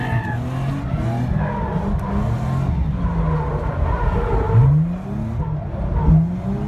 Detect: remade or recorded recorded